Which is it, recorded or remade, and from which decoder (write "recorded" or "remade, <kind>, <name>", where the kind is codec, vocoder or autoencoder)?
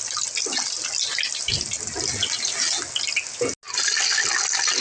recorded